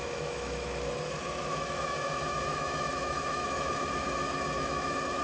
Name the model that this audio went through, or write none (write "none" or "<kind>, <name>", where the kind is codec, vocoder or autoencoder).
autoencoder, DAC-VAE